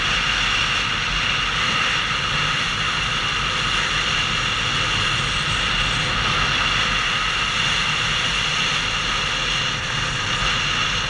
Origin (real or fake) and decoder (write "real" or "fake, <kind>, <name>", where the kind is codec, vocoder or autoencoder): real